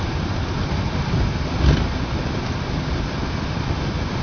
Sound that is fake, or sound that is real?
real